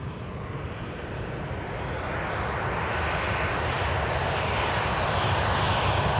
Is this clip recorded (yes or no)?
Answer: yes